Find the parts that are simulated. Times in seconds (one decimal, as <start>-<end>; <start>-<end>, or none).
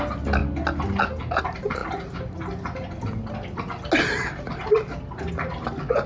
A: none